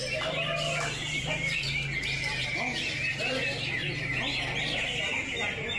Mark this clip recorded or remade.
recorded